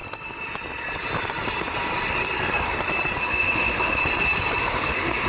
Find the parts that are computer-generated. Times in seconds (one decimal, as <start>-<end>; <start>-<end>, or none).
3.2-4.0; 4.6-5.3